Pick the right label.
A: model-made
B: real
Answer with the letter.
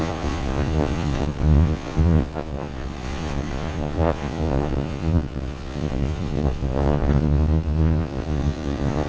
A